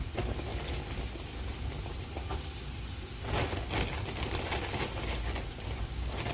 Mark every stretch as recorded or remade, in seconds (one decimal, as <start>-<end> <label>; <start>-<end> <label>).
0.0-6.3 recorded